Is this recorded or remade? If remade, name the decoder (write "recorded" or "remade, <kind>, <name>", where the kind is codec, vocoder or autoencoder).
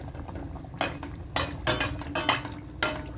recorded